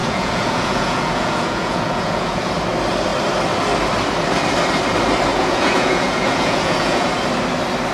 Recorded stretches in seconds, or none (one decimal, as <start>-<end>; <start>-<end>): 2.5-5.3; 7.1-7.9